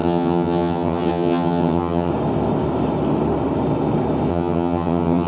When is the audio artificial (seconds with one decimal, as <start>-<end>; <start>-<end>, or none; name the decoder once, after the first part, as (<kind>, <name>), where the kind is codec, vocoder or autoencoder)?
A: 0.0-2.1 (vocoder, HiFi-GAN); 4.3-5.3